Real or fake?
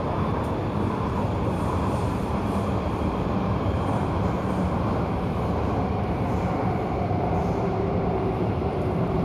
fake